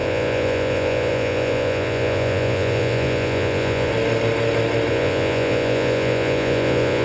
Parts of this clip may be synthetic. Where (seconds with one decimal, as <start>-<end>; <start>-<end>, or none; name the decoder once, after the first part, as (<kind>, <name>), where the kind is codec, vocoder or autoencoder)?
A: 0.0-3.9 (vocoder, Vocos); 4.9-7.0